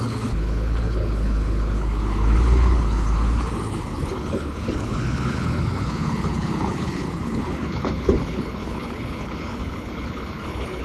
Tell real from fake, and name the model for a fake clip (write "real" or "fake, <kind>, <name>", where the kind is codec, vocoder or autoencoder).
fake, codec, HILCodec